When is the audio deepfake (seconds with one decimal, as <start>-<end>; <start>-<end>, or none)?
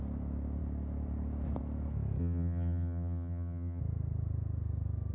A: 2.2-3.8